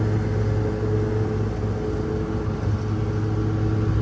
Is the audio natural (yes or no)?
yes